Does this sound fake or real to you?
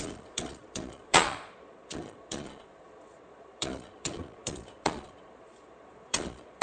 fake